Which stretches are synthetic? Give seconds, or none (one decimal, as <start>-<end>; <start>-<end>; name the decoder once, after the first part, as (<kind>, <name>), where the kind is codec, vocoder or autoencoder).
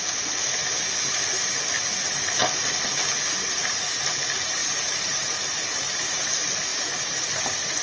4.6-6.2 (vocoder, BigVGAN v2); 6.7-7.3